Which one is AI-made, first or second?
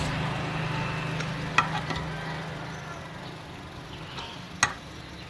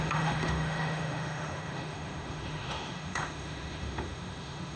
second